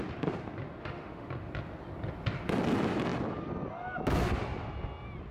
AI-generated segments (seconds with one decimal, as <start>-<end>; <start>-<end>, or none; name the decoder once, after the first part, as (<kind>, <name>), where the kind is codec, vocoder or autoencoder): 0.8-1.3 (autoencoder, DAC-VAE)